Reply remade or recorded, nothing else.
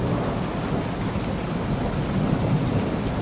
recorded